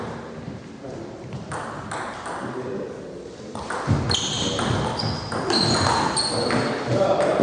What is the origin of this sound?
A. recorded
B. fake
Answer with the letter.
A